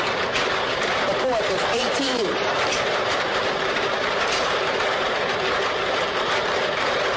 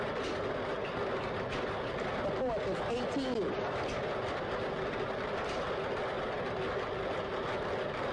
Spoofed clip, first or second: first